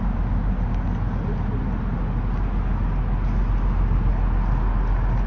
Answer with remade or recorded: recorded